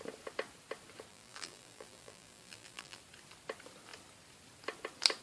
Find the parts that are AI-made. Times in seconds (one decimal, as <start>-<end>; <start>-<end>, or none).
1.1-3.0